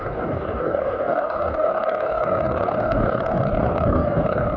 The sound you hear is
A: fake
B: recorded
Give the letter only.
A